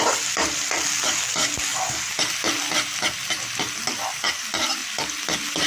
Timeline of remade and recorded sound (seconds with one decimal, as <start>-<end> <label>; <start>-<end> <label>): 0.0-5.7 recorded